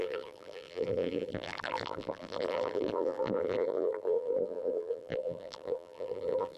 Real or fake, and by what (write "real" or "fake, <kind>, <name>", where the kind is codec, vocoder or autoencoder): fake, vocoder, BigVGAN v2